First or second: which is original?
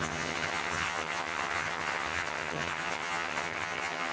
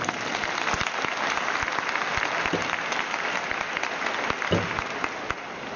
second